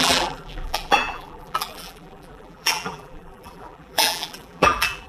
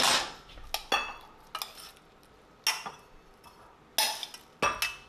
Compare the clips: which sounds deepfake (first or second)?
first